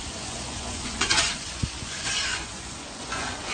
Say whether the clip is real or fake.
fake